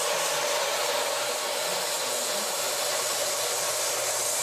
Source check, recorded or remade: recorded